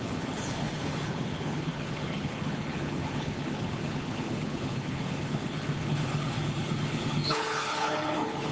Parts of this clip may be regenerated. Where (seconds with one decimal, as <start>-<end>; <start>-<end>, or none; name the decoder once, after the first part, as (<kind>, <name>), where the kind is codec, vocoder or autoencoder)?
0.0-8.5 (codec, HILCodec)